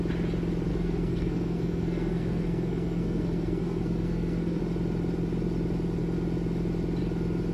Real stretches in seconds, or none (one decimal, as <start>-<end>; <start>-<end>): 0.0-0.7; 4.6-7.5